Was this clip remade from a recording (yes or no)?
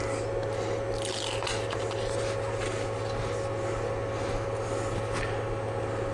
no